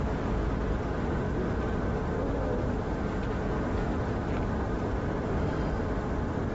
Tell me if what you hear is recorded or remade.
recorded